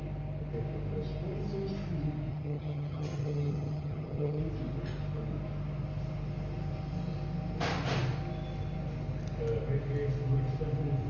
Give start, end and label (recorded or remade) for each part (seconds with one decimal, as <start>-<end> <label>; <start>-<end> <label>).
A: 0.0-2.3 recorded; 2.3-4.4 remade; 4.4-11.1 recorded